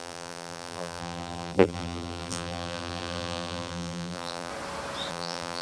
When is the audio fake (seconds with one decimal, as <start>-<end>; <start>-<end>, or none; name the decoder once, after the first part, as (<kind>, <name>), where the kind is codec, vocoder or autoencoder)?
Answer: 0.0-4.5 (vocoder, BigVGAN v2); 5.1-5.6